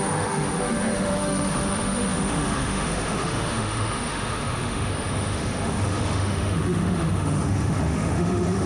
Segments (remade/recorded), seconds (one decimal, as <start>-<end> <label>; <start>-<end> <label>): 0.0-8.7 remade